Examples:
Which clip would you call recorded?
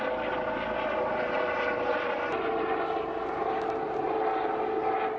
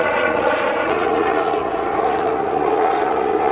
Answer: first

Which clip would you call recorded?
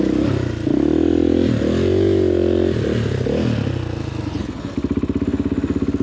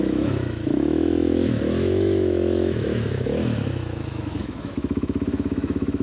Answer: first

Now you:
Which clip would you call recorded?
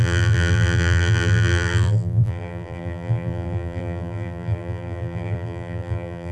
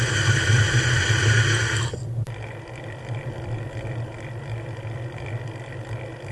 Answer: second